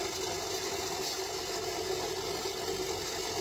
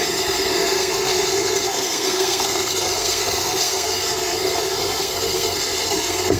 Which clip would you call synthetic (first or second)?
second